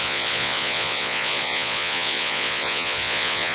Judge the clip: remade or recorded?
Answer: remade